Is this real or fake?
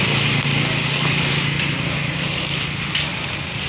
real